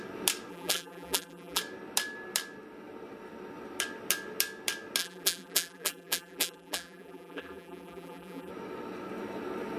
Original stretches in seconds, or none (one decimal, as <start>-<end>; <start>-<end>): 0.0-0.5; 1.6-5.0; 8.5-9.8